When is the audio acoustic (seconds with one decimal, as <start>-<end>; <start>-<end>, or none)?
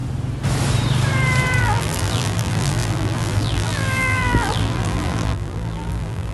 0.0-1.6